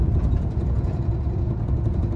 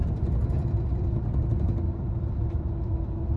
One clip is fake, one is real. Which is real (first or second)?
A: second